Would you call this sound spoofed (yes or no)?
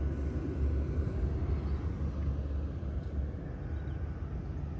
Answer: no